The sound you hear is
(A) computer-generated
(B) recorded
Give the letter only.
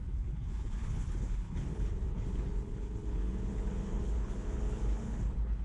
A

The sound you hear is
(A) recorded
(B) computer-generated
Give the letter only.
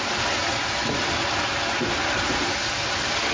A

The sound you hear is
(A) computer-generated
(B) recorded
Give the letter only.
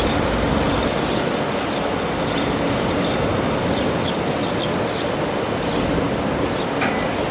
B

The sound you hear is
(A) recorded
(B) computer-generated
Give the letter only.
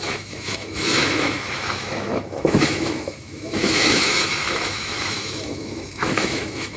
B